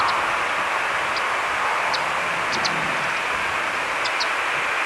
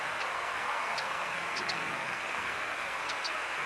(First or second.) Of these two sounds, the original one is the first